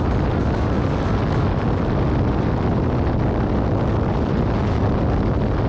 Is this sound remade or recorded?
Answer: recorded